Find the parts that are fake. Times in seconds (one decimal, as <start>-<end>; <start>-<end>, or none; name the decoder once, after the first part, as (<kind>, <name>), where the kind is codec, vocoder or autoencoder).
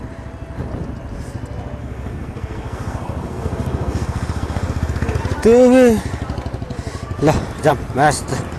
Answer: 1.8-5.2 (codec, SNAC)